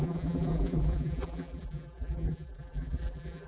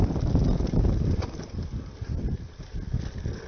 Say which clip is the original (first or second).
second